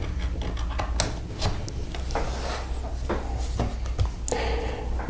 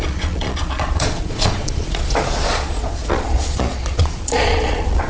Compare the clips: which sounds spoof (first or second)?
second